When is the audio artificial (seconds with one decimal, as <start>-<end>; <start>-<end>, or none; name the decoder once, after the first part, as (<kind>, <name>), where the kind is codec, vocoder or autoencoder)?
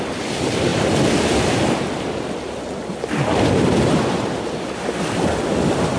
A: none